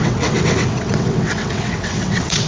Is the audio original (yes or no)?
no